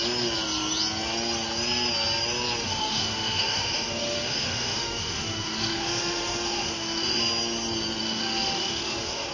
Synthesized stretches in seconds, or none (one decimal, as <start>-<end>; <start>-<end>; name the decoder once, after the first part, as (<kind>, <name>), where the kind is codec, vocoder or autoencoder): 2.6-7.2 (autoencoder, DAC-VAE); 8.0-9.3